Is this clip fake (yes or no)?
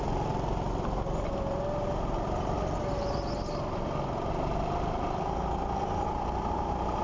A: no